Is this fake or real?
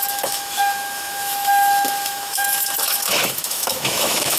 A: fake